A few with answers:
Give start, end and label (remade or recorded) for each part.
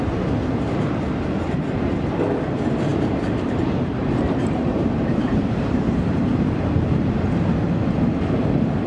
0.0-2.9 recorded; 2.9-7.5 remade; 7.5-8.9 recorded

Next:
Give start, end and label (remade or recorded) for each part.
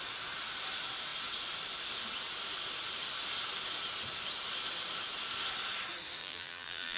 0.0-6.2 recorded; 6.2-7.0 remade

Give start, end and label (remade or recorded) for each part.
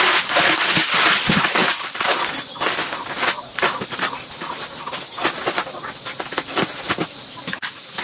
0.0-1.6 recorded; 1.6-2.3 remade; 2.3-3.5 recorded; 3.5-4.3 remade; 4.3-8.0 recorded